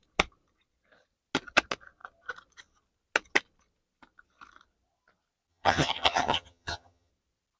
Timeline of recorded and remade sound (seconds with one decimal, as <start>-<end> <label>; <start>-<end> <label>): 0.0-5.5 recorded; 5.5-7.1 remade; 7.1-7.6 recorded